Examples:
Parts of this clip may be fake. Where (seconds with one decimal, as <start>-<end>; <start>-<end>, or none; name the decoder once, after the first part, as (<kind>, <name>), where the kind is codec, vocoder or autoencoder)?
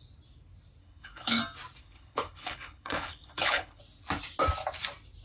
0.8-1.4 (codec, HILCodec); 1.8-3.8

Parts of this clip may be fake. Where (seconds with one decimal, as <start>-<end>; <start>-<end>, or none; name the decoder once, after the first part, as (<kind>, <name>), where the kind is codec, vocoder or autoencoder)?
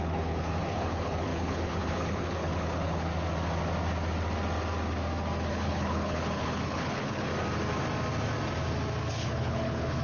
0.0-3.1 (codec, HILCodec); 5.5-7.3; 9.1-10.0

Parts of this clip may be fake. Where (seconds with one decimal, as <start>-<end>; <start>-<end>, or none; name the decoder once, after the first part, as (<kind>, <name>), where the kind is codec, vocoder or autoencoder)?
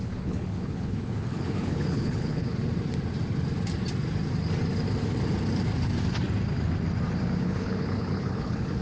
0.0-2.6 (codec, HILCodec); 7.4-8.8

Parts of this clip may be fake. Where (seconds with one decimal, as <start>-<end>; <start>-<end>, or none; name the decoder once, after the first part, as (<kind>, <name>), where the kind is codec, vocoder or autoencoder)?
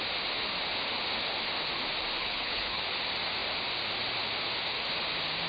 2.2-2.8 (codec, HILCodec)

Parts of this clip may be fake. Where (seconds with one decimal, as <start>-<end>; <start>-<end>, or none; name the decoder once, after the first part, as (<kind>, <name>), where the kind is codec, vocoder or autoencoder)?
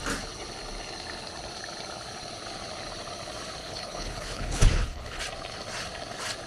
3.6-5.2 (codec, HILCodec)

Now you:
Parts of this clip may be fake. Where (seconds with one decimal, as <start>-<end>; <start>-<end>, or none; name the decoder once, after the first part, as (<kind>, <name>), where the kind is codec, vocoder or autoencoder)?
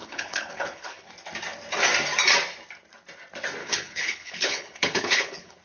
0.0-1.1 (codec, HILCodec); 3.6-5.6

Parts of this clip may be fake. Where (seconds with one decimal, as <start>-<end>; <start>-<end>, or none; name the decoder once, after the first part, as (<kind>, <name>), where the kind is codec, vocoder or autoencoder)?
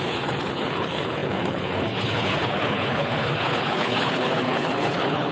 0.0-5.3 (codec, HILCodec)